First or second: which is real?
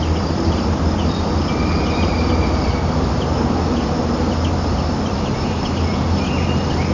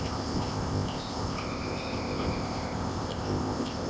first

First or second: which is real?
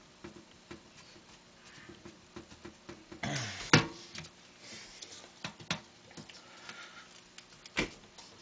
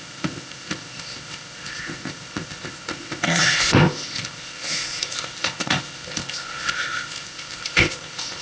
first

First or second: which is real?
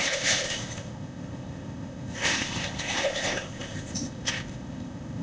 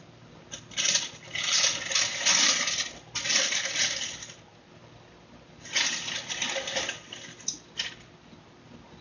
second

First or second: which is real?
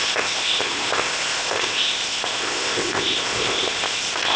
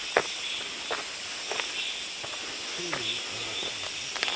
second